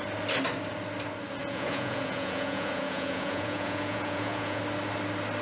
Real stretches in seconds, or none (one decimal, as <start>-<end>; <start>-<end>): 0.0-1.4; 4.6-5.4